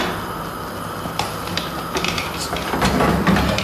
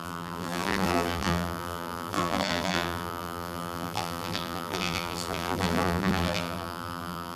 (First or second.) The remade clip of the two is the second